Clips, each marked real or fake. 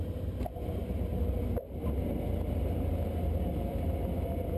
real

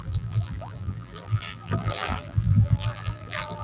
fake